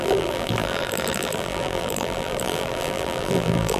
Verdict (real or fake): fake